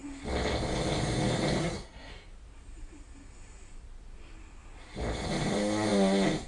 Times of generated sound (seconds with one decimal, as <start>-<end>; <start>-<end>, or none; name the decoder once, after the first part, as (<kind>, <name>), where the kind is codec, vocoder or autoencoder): 1.6-2.1 (codec, SNAC)